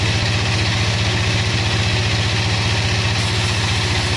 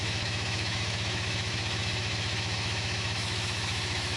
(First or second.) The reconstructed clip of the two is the second